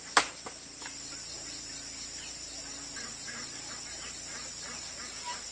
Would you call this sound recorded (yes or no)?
yes